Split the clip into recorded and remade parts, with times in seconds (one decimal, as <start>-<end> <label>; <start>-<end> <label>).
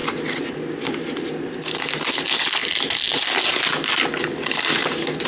0.0-5.3 recorded